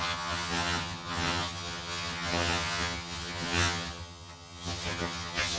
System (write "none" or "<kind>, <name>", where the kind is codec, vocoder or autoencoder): vocoder, HiFi-GAN